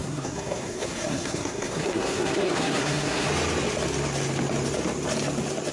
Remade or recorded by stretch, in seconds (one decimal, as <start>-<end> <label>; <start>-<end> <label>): 0.0-3.3 remade; 3.3-5.7 recorded